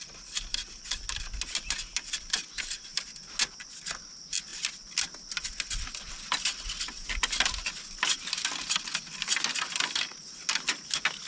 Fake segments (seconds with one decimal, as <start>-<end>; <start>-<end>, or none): none